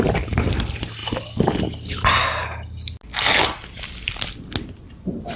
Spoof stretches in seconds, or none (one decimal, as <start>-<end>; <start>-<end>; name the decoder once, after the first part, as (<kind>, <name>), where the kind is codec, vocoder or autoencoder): none